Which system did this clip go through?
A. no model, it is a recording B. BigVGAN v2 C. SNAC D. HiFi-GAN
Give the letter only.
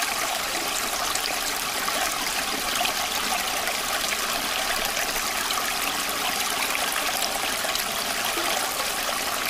A